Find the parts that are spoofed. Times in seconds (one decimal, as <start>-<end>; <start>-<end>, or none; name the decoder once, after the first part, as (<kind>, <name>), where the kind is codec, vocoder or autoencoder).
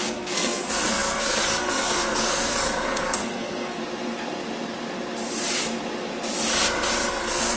0.0-3.8 (codec, SNAC); 7.1-7.6